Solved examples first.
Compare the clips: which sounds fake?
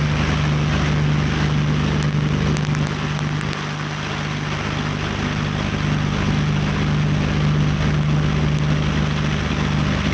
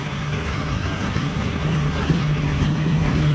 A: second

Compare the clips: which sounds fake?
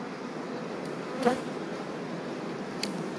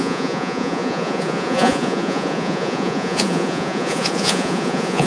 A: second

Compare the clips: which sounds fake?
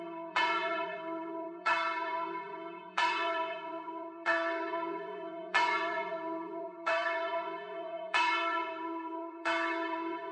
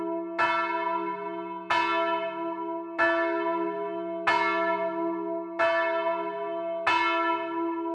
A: first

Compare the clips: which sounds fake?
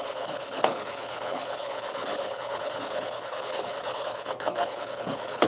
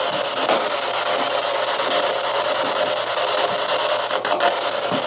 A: first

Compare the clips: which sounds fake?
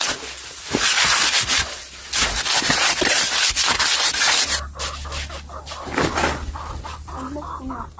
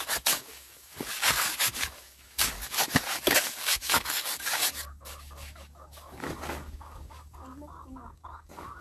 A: second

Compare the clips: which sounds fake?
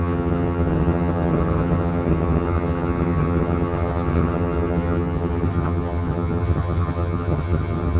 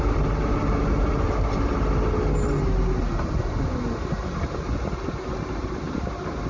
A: first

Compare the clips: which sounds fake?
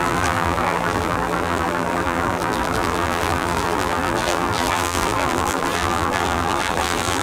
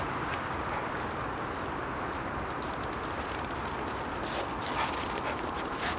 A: first